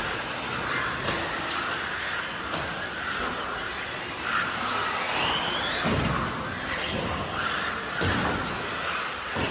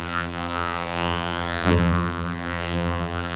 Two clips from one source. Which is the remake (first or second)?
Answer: second